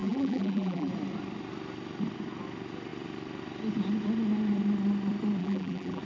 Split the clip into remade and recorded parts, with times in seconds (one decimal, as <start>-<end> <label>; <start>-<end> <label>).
0.0-0.9 remade; 0.9-5.4 recorded; 5.4-6.0 remade